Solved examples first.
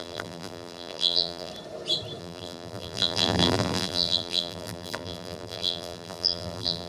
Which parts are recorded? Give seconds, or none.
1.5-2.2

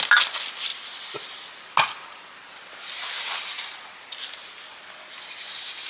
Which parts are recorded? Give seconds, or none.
0.0-5.9

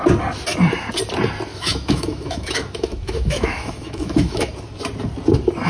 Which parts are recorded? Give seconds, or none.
0.0-1.5; 4.5-5.7